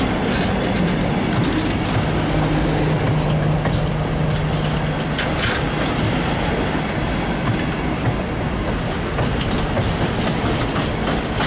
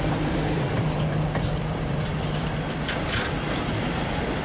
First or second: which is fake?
second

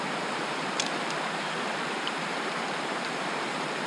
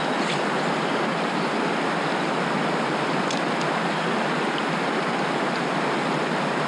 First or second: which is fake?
first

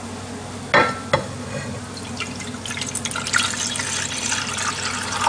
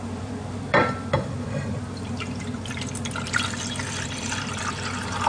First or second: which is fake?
second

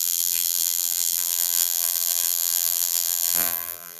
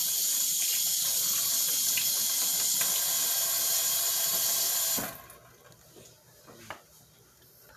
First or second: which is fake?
first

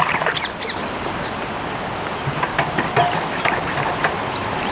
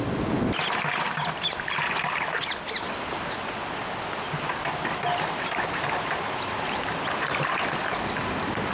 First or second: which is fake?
first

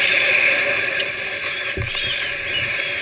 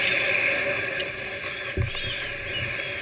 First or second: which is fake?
first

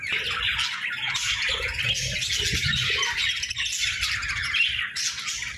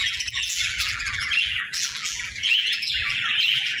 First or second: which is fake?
second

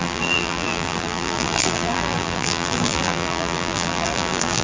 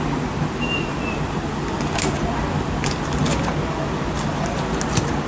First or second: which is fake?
first